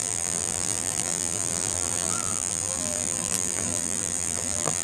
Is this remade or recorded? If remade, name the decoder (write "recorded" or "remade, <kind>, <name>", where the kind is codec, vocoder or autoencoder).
remade, vocoder, BigVGAN v2